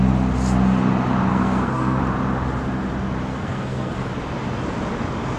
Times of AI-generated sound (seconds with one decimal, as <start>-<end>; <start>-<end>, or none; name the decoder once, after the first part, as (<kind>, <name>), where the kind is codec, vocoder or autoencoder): 1.3-2.0 (codec, SNAC); 3.3-4.1